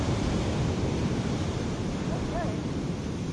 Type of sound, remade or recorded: remade